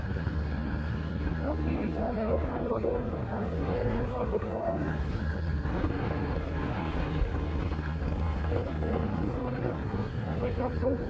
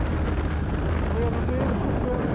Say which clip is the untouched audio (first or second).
second